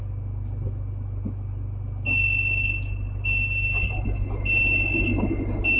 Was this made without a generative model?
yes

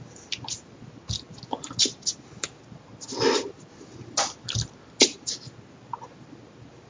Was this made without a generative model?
yes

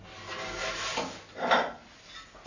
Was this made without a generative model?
yes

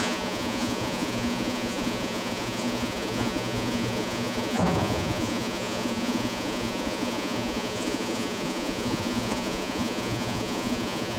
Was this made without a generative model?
no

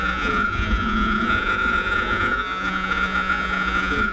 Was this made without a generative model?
no